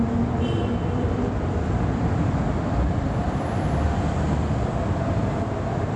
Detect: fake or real fake